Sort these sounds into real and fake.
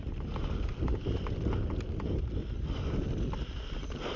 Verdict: real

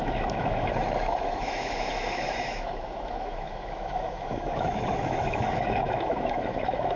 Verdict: fake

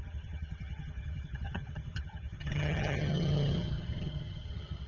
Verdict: fake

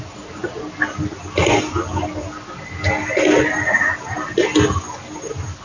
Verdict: real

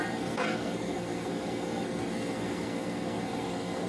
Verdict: fake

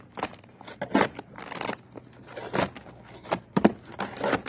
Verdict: real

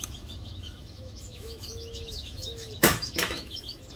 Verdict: fake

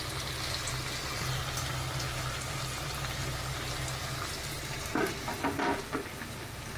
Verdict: real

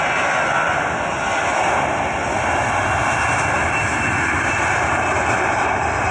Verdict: real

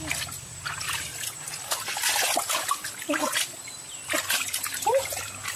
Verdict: real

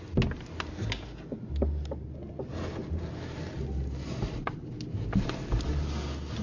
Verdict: real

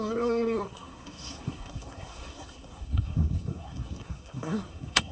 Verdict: fake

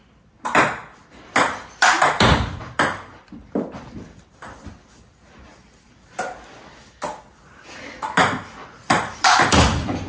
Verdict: real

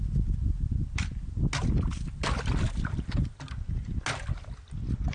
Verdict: real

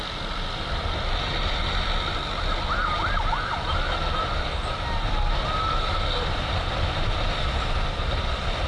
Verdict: real